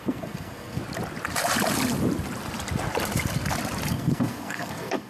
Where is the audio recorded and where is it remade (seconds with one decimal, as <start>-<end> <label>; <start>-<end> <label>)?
0.0-0.8 remade; 0.8-3.9 recorded; 3.9-5.1 remade